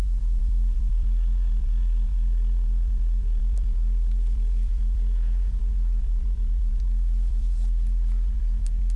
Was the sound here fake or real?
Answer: fake